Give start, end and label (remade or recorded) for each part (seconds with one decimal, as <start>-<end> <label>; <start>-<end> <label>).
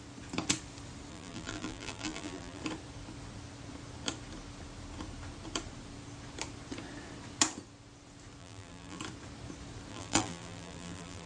0.0-1.1 recorded; 1.1-2.6 remade; 2.6-8.4 recorded; 8.4-9.0 remade; 9.0-9.9 recorded; 9.9-11.3 remade